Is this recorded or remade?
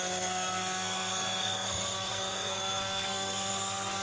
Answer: remade